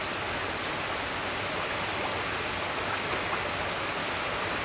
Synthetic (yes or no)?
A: no